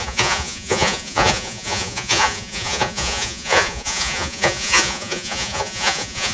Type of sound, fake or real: fake